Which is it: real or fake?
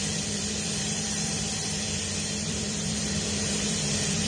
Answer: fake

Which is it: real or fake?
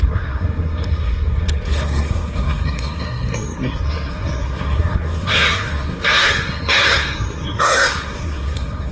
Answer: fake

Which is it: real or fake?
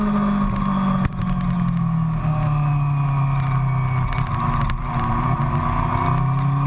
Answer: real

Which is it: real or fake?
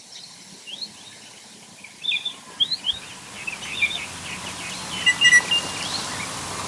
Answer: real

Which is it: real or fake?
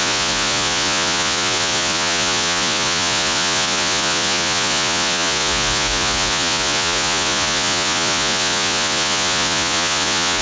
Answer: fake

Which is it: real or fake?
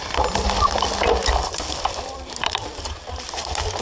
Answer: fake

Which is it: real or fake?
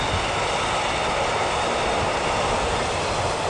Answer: real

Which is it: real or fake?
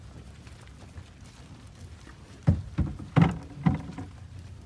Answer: real